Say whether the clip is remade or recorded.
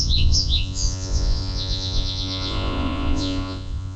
remade